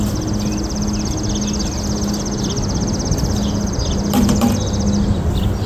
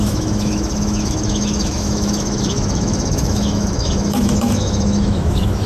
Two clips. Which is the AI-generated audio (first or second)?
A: second